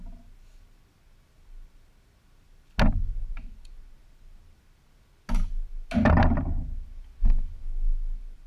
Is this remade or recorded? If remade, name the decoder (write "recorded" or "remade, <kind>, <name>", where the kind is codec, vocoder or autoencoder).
recorded